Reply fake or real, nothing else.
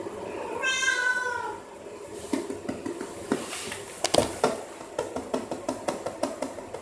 real